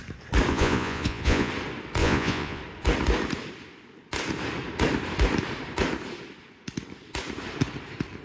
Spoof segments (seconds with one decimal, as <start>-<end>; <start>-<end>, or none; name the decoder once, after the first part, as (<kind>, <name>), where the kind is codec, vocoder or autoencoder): 0.5-1.5 (vocoder, Vocos); 2.0-2.6